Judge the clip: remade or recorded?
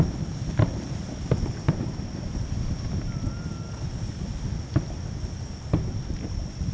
recorded